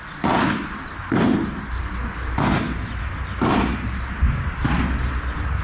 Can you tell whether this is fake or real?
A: real